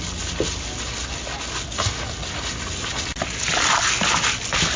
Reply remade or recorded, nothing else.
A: recorded